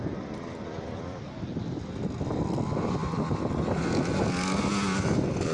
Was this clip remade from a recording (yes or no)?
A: no